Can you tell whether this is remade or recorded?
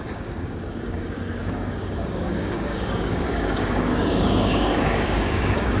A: remade